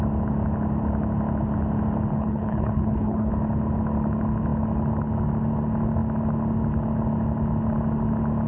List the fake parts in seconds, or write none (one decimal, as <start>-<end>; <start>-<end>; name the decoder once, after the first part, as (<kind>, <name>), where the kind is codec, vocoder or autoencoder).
2.1-3.3 (codec, HILCodec)